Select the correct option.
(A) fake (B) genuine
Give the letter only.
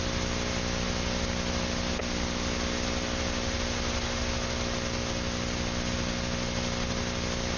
B